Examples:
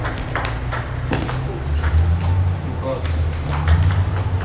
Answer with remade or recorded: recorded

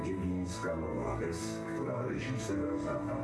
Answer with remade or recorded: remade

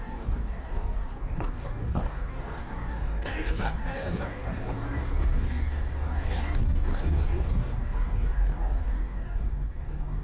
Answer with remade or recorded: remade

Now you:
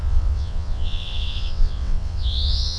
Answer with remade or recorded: remade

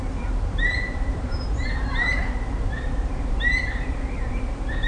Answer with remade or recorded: remade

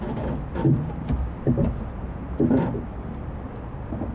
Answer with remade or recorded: recorded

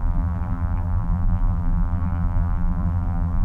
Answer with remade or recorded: remade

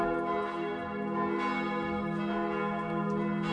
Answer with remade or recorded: recorded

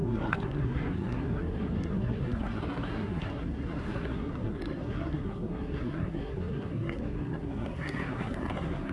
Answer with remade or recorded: remade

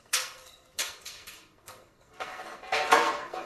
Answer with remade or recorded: remade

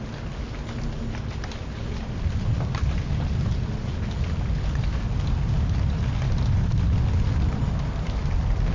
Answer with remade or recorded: recorded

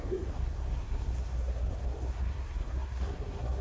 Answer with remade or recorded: remade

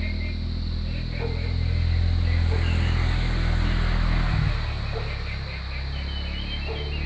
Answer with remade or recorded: recorded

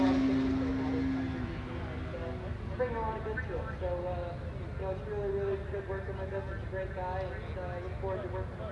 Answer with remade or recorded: recorded